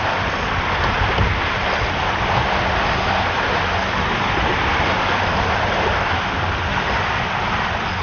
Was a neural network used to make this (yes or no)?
no